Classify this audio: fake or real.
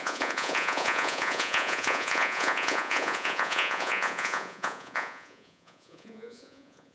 fake